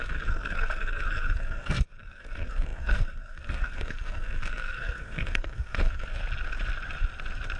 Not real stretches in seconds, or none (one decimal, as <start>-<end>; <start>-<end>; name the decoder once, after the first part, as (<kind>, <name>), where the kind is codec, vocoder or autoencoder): 0.0-6.2 (codec, SNAC)